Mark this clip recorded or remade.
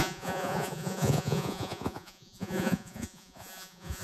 remade